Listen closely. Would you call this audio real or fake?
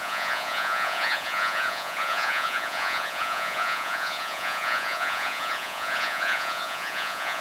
fake